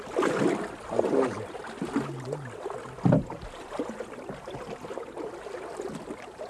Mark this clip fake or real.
real